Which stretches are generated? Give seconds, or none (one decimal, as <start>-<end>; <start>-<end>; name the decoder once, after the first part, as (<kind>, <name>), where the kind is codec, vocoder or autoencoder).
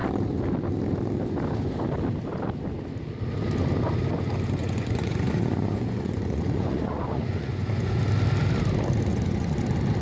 4.6-8.0 (vocoder, Vocos); 9.1-9.6